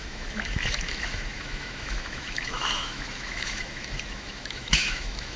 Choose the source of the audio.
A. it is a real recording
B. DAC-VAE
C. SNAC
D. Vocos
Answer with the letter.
B